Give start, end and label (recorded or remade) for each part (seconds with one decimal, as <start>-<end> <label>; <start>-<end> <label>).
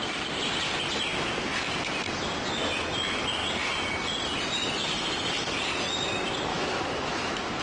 0.0-6.5 recorded; 6.5-7.6 remade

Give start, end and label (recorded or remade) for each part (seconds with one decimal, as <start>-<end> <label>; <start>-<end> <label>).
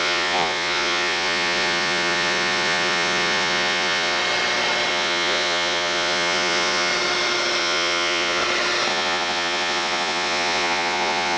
0.0-4.2 remade; 4.2-4.9 recorded; 4.9-6.9 remade; 6.9-7.6 recorded; 7.6-8.4 remade; 8.4-8.9 recorded; 8.9-11.4 remade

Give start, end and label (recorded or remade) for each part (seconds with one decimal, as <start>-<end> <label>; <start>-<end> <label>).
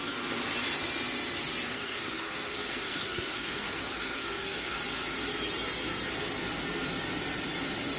0.0-1.7 recorded; 1.7-4.8 remade; 4.8-8.0 recorded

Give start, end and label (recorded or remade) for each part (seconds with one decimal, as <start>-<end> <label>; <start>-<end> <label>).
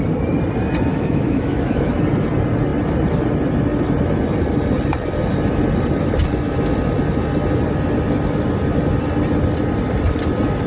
0.0-0.9 recorded; 0.9-2.0 remade; 2.0-10.7 recorded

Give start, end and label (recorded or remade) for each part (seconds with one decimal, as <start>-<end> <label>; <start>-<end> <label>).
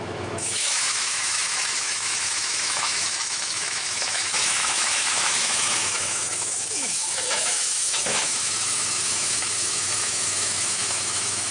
0.0-11.5 remade